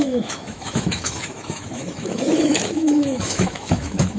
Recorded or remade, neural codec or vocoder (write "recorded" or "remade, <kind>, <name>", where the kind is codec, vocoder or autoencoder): remade, autoencoder, DAC-VAE